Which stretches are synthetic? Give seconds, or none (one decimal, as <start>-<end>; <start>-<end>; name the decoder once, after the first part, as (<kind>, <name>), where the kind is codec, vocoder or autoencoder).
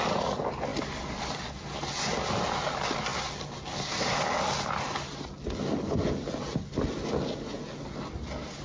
none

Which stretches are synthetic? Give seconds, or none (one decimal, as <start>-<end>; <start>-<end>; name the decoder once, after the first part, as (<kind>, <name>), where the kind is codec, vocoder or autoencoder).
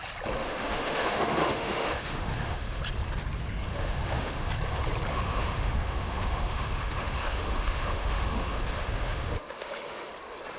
0.4-2.8 (autoencoder, DAC-VAE); 3.7-4.5; 5.1-10.1